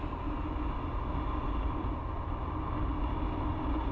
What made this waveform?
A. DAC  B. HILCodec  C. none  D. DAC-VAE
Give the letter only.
C